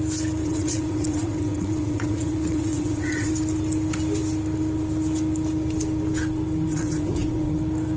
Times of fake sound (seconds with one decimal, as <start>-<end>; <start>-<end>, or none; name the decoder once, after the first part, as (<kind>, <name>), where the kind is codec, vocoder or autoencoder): 0.4-3.3 (vocoder, WaveNeXt); 6.7-7.6